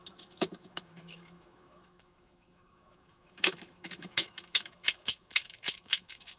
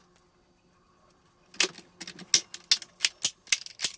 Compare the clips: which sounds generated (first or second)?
first